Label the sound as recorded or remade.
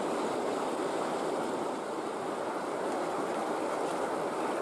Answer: recorded